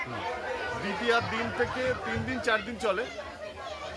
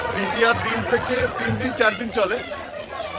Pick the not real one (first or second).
second